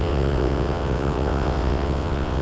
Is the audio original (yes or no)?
no